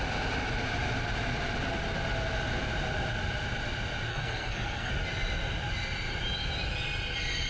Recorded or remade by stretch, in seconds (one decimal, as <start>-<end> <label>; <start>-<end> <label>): 0.0-4.1 recorded; 4.1-4.9 remade; 4.9-7.5 recorded